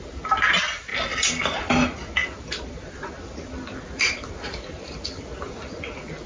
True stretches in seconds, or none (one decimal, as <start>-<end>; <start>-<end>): 0.0-2.2; 5.5-6.3

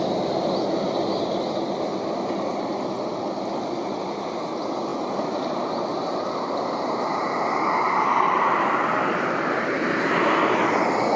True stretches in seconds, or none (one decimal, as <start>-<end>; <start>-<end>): 0.0-11.2

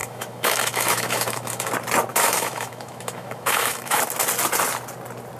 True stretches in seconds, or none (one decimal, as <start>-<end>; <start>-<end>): 1.7-2.1; 4.0-5.4

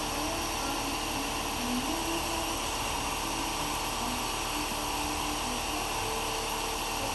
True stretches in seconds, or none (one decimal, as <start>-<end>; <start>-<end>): 0.0-7.1

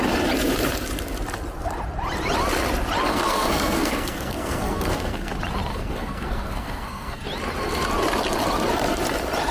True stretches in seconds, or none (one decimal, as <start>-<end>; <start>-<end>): 0.0-3.1; 5.3-5.7; 7.2-9.5

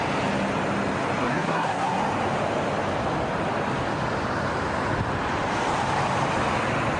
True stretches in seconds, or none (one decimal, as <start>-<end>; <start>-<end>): 0.0-1.2; 2.0-7.0